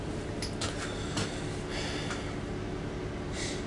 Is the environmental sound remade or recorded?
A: recorded